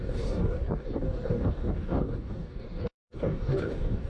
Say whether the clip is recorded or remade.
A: remade